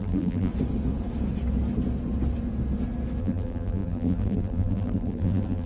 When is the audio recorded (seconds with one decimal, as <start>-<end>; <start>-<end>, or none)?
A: 0.5-3.2